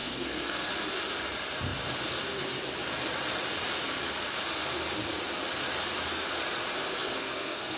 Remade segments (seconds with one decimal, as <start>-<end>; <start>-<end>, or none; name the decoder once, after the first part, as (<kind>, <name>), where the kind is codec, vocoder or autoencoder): 0.0-0.7 (codec, SNAC); 6.9-7.8